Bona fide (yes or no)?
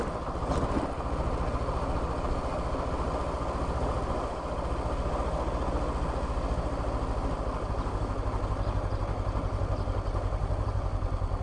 yes